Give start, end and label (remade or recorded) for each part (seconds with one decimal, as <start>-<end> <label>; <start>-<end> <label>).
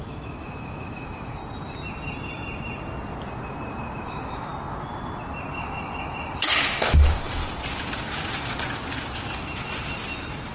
0.0-1.4 remade; 1.4-4.0 recorded; 4.0-4.5 remade; 4.5-5.5 recorded; 5.5-7.4 remade; 7.4-10.5 recorded